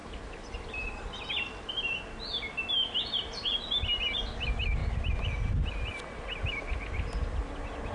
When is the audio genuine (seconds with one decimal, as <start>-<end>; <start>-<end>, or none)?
0.0-7.9